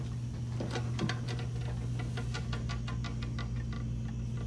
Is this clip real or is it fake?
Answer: real